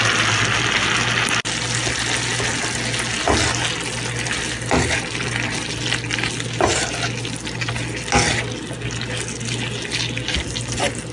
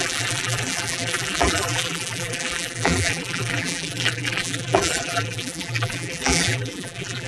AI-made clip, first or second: second